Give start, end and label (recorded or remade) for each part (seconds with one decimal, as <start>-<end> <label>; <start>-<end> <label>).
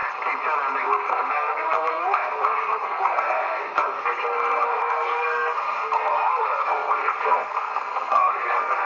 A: 0.0-0.8 recorded; 0.8-8.9 remade